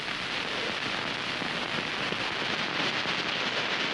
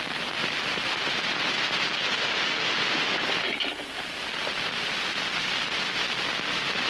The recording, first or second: first